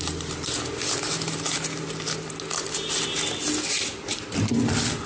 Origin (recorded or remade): recorded